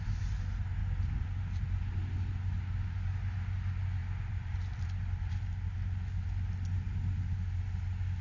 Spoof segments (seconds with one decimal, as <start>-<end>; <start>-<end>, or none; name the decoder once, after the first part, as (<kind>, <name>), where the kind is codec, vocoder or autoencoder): 0.8-1.8 (vocoder, BigVGAN v2); 4.0-5.4